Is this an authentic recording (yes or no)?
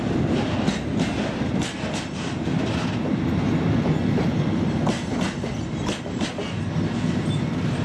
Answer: yes